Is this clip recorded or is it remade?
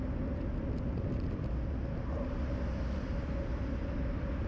recorded